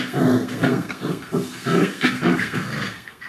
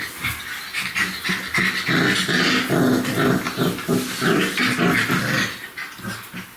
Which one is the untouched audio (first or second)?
second